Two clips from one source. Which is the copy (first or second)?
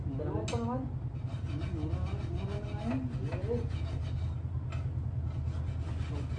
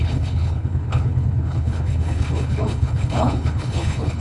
second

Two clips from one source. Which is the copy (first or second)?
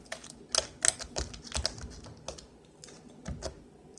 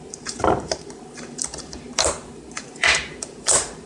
second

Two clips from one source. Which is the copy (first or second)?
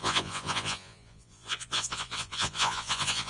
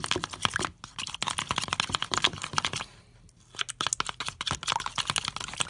first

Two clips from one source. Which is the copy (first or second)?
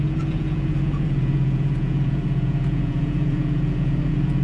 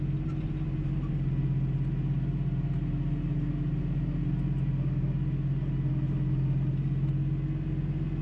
first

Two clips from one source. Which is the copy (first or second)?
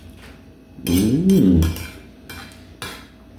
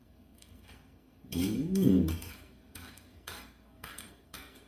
second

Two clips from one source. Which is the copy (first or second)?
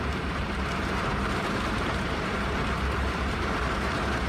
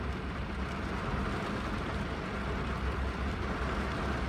first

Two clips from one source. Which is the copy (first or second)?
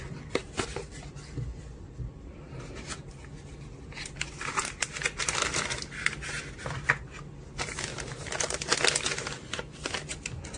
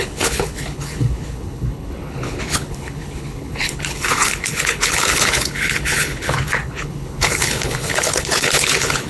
second